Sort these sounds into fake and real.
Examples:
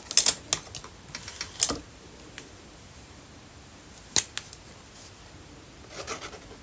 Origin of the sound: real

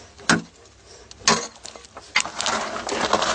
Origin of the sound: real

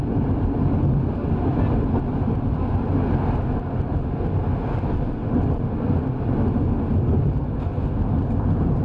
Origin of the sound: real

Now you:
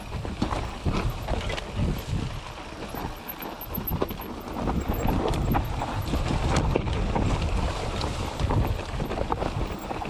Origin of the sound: real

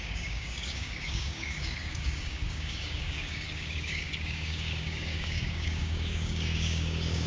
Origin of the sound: fake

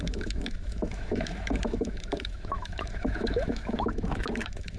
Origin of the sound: fake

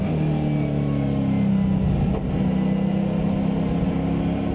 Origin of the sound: real